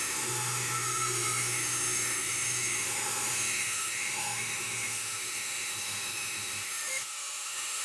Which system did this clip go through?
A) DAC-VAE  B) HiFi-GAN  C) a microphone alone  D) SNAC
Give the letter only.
A